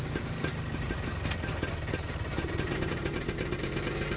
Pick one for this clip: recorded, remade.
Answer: recorded